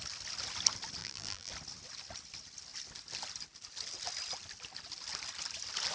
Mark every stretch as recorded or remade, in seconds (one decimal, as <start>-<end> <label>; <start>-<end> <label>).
0.0-1.0 recorded; 1.0-1.5 remade; 1.5-5.9 recorded